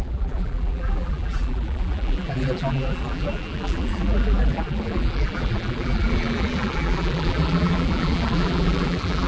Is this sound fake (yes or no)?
yes